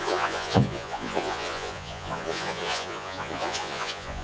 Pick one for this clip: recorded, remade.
remade